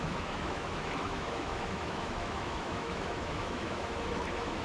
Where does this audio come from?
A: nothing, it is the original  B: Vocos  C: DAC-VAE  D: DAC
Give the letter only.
C